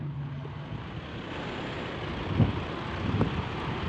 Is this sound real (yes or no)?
yes